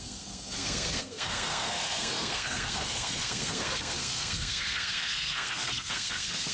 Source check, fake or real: fake